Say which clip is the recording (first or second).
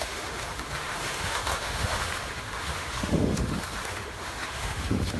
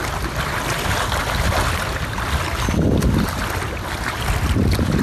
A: second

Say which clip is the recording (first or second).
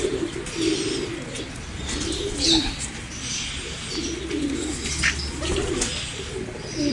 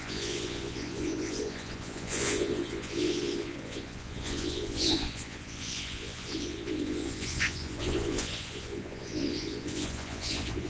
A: first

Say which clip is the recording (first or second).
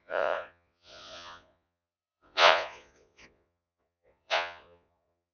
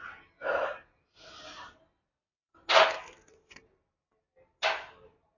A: second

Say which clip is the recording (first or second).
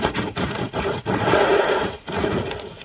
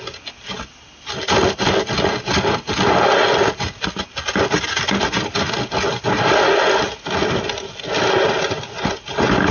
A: second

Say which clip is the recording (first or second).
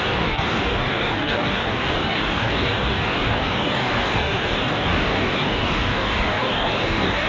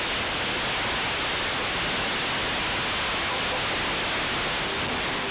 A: second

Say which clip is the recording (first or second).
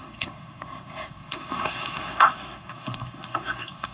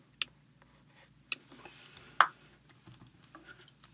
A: second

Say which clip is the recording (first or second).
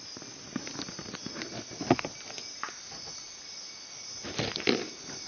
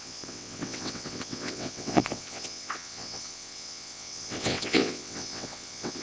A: first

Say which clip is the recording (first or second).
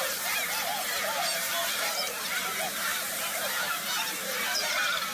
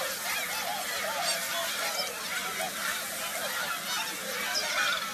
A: second